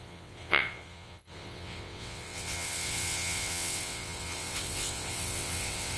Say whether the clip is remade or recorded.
remade